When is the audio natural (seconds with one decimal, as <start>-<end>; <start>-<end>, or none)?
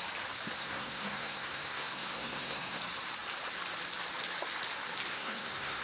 0.0-0.6; 2.8-5.1